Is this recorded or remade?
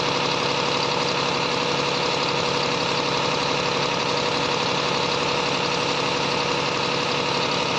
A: recorded